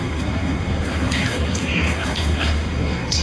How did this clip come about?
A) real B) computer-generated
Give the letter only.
B